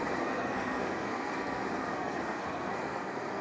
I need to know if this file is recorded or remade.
remade